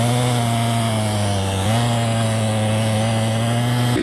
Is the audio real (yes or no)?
yes